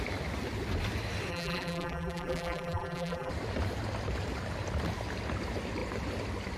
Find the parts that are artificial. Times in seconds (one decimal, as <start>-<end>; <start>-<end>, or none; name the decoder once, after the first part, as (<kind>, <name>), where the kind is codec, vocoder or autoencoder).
1.3-3.3 (vocoder, BigVGAN v2)